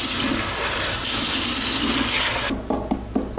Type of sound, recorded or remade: recorded